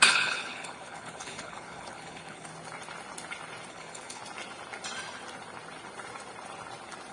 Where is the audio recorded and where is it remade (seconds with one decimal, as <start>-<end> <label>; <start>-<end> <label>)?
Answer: 0.0-2.5 remade; 2.5-3.7 recorded; 3.7-4.2 remade; 4.2-7.1 recorded